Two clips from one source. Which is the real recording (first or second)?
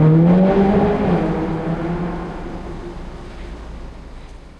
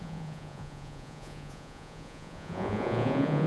first